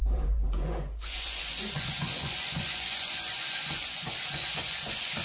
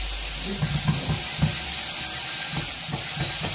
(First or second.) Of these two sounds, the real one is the second